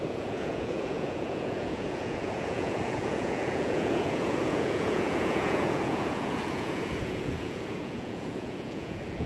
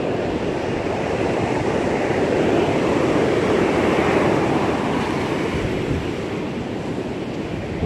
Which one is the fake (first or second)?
first